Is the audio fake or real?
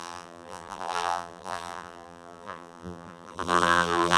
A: fake